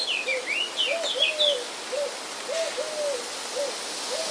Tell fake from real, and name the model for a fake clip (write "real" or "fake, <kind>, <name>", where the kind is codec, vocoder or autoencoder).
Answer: real